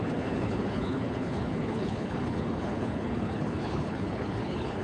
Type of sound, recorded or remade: remade